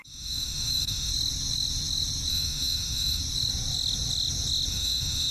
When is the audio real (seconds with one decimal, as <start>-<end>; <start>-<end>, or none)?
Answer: 1.1-2.3; 3.2-4.7